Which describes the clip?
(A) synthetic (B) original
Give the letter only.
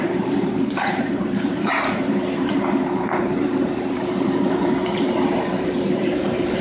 A